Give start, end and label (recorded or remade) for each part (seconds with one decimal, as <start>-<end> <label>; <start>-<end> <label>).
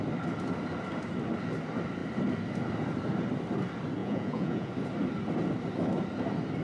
0.0-4.0 recorded; 4.0-4.7 remade; 4.7-6.6 recorded